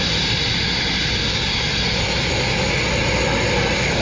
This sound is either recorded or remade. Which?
recorded